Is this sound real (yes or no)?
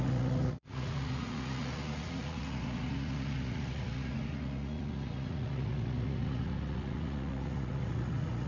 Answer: no